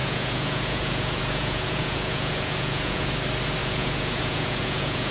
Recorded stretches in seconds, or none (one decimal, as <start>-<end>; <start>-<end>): 3.1-3.6